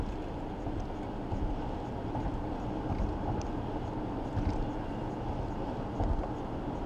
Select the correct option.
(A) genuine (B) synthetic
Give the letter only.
A